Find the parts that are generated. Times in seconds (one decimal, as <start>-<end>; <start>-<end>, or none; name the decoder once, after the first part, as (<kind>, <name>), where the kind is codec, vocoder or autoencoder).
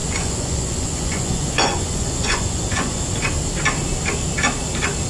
0.0-3.0 (vocoder, Vocos)